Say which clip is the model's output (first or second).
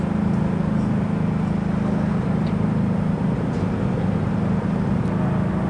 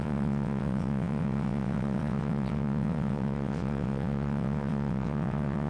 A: second